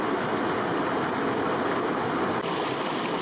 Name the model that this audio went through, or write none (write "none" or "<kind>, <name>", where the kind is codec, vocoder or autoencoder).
none